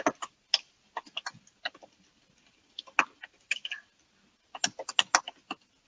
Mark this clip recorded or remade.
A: recorded